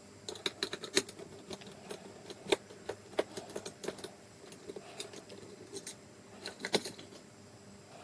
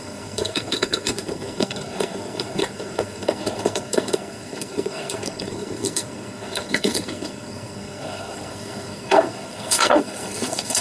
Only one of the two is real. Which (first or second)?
first